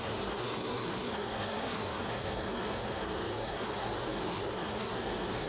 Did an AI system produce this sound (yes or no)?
yes